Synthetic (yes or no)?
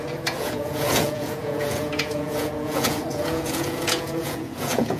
yes